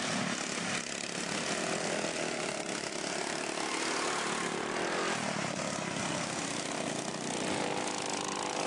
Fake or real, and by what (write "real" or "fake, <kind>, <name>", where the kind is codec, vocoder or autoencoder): real